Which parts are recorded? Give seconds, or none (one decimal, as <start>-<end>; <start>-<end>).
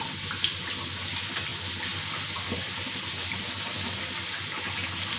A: 0.0-5.2